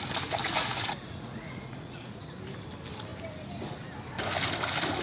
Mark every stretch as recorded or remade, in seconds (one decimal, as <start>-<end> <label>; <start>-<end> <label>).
0.0-0.4 recorded; 0.4-2.2 remade; 2.2-5.0 recorded